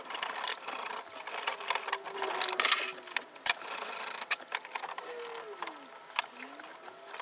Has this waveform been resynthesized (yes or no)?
no